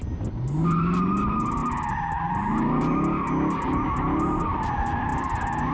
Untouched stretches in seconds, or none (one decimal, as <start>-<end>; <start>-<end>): 0.0-5.7